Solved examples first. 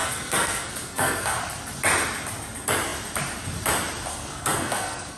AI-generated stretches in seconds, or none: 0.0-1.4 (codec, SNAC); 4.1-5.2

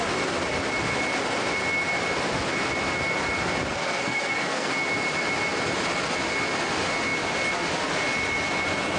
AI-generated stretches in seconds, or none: 3.7-4.7 (codec, SNAC)

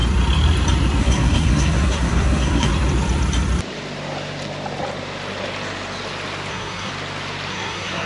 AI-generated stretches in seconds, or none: 1.0-2.7 (codec, SNAC); 6.5-6.9; 7.5-8.1

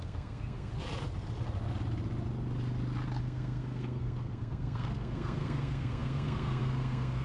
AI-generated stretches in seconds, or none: 0.0-0.7 (codec, SNAC); 3.2-7.2